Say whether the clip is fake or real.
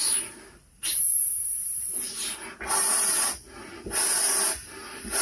real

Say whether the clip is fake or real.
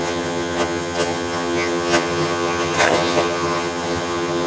fake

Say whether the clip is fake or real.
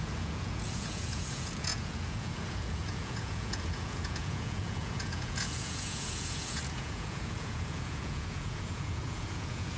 fake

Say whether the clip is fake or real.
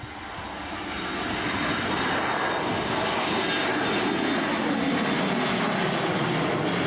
real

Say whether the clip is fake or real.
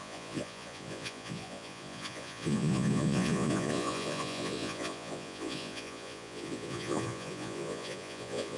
fake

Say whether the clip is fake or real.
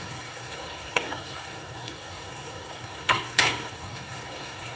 fake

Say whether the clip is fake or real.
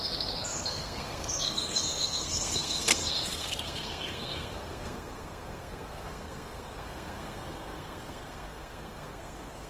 fake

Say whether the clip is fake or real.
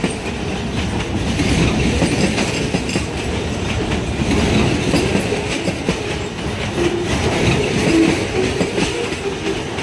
real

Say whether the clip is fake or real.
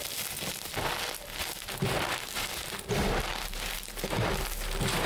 real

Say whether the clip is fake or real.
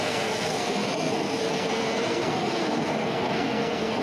fake